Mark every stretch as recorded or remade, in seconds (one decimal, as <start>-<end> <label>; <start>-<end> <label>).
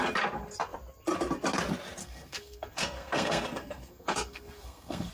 0.0-2.0 recorded; 2.0-5.1 remade